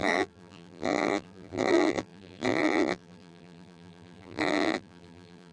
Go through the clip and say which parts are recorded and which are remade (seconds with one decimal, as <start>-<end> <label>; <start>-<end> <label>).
0.0-5.5 remade